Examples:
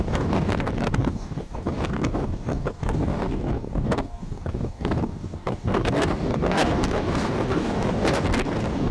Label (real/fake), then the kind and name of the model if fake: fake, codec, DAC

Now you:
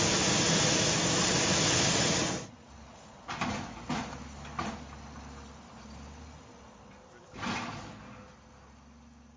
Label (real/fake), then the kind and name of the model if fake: real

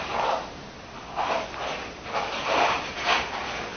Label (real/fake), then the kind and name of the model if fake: real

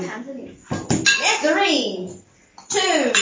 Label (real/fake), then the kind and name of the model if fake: real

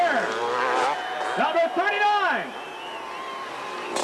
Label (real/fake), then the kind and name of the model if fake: real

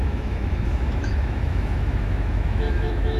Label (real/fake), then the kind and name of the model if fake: fake, autoencoder, DAC-VAE